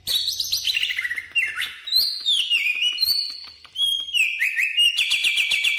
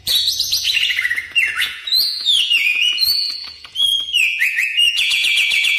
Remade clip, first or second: second